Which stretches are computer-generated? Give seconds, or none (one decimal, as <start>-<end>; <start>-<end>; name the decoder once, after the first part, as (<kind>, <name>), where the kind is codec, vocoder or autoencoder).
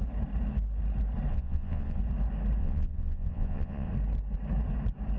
1.3-2.0 (vocoder, Vocos); 2.6-3.9